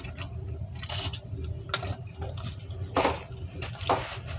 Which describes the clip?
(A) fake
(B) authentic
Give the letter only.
B